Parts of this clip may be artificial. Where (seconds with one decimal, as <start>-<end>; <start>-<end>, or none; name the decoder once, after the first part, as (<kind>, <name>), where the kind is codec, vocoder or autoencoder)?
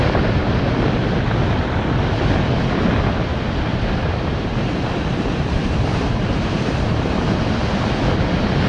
3.3-7.2 (vocoder, BigVGAN v2)